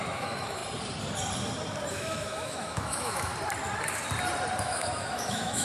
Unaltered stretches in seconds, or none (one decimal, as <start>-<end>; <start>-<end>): 0.6-1.9; 3.3-4.6